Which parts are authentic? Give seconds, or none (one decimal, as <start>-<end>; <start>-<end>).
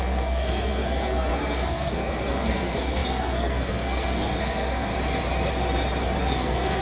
4.9-6.2